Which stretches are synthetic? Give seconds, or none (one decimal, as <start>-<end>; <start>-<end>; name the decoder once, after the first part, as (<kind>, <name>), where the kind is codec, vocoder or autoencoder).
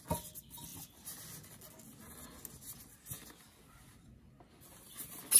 none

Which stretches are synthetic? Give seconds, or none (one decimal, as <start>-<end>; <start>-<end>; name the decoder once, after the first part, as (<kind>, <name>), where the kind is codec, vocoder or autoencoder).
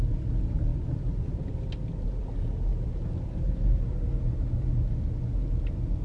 2.7-3.6 (vocoder, BigVGAN v2)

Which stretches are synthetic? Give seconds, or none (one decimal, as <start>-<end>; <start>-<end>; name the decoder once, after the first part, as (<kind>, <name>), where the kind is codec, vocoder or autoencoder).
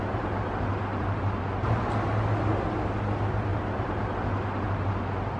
0.9-1.4 (vocoder, BigVGAN v2); 3.5-4.0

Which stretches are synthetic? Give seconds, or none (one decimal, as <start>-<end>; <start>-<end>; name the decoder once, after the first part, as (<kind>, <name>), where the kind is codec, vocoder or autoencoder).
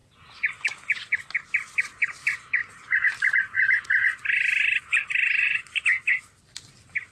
0.0-1.4 (vocoder, BigVGAN v2); 2.6-7.1